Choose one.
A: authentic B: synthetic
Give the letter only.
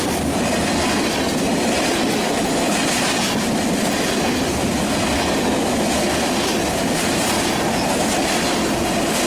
A